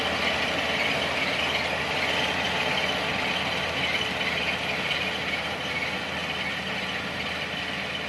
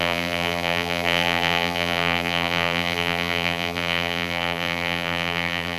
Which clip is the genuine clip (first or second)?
first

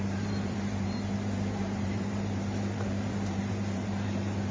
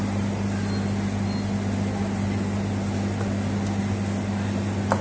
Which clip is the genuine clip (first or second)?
second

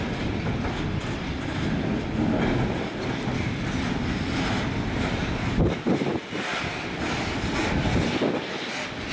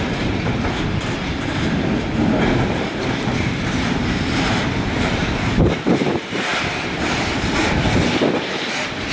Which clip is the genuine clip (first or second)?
first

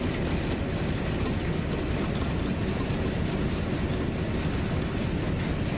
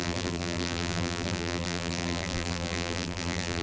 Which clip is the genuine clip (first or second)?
first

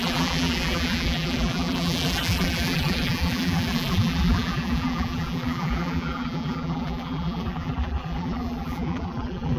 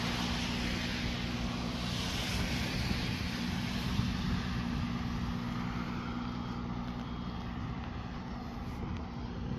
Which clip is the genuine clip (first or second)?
second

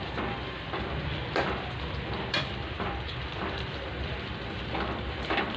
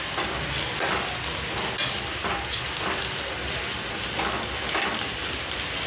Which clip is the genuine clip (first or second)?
second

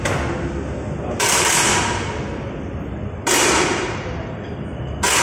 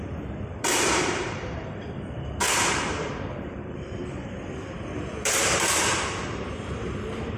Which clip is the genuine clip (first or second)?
first